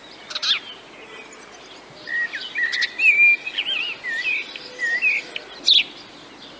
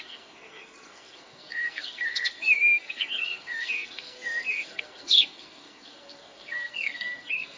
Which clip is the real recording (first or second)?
first